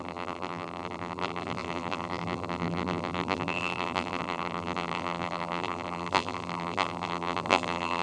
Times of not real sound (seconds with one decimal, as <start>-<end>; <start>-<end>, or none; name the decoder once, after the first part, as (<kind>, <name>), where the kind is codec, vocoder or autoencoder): 0.0-8.0 (vocoder, BigVGAN v2)